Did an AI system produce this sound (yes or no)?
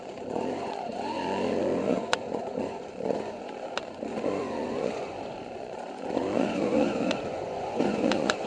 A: yes